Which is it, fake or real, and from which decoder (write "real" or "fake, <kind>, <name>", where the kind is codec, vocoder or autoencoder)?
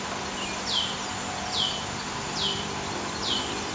real